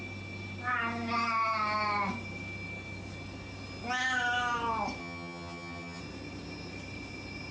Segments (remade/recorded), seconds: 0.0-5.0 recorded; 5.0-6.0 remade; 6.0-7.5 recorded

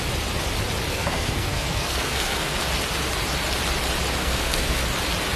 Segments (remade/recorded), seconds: 0.0-0.9 recorded; 0.9-2.6 remade; 2.6-4.2 recorded; 4.2-4.8 remade; 4.8-5.4 recorded

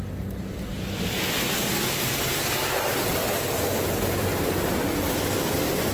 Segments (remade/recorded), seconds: 0.0-5.9 recorded